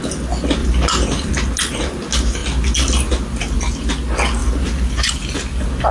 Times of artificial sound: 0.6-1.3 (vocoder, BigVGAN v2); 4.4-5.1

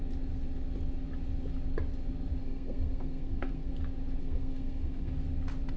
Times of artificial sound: 2.4-3.7 (codec, SNAC); 4.2-5.1